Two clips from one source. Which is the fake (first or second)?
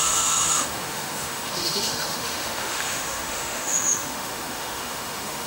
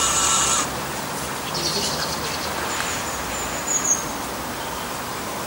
first